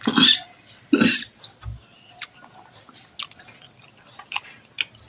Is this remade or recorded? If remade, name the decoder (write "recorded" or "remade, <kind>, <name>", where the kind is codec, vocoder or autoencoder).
recorded